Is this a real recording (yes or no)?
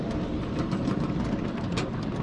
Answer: yes